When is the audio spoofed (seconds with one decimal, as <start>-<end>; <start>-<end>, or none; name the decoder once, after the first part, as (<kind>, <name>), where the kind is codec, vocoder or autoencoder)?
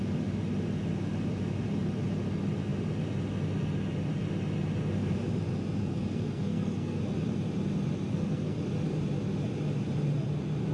5.8-7.0 (codec, SNAC); 8.1-8.6